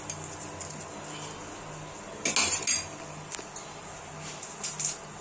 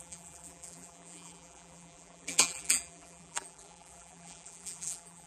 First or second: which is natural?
first